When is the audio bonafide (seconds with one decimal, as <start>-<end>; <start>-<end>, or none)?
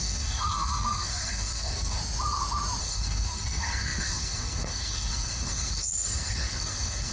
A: 2.0-2.8